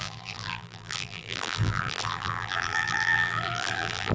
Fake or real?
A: fake